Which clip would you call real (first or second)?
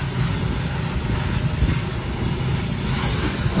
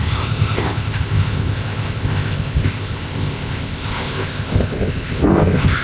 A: first